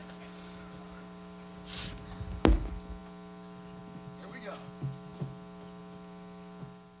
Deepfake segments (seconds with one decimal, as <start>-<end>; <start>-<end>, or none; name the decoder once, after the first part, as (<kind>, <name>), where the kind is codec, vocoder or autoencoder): none